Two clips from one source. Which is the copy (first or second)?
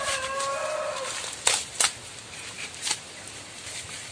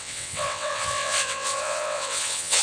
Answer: second